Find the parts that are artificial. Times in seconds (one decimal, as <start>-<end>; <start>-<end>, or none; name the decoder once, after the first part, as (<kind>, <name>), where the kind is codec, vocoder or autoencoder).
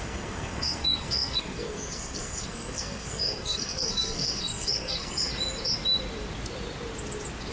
0.0-5.3 (codec, SNAC)